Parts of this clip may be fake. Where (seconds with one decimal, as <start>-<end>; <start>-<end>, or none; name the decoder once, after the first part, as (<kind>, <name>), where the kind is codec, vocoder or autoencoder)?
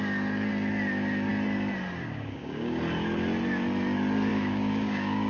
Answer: 2.0-2.8 (codec, DAC); 4.3-5.3